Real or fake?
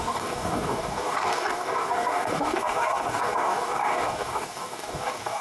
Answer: fake